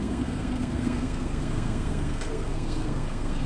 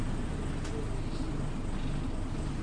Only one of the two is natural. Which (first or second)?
second